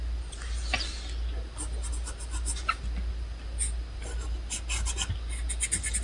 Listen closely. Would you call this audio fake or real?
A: real